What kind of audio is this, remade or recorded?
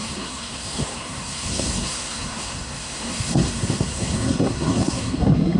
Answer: remade